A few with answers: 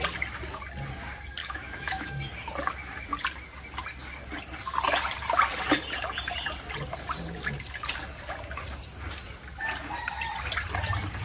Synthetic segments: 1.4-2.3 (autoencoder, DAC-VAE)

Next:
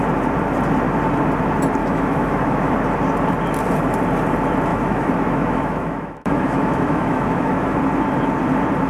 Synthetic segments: 1.8-2.7 (autoencoder, DAC-VAE); 4.7-7.8

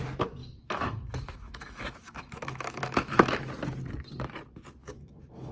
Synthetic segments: 0.4-3.5 (autoencoder, DAC-VAE); 4.8-5.5

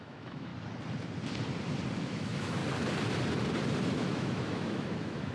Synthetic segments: 0.0-0.5 (autoencoder, DAC-VAE); 2.0-2.6; 3.9-5.3

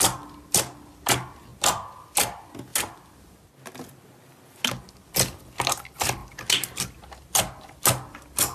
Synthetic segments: none

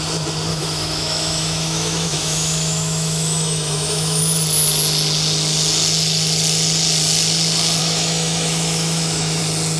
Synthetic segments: 0.5-4.2 (autoencoder, DAC-VAE); 7.8-9.4

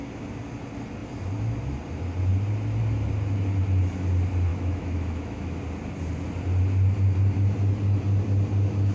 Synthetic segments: 4.5-5.6 (autoencoder, DAC-VAE)

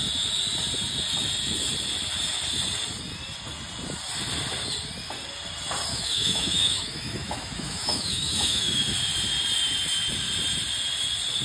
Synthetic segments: 5.9-8.8 (autoencoder, DAC-VAE)